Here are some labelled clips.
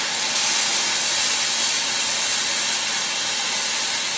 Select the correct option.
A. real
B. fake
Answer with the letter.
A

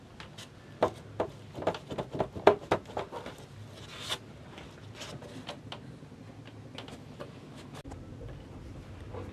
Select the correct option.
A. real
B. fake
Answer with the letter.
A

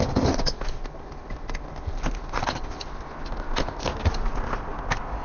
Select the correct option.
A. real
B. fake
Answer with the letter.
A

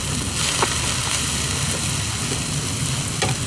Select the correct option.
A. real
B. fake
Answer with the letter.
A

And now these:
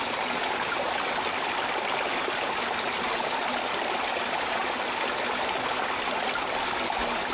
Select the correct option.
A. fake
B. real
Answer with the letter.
B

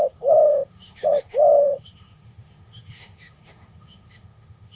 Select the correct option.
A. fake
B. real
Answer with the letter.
A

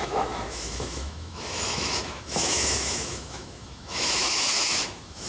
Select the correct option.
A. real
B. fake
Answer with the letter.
B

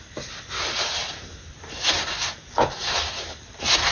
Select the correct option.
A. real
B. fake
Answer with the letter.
A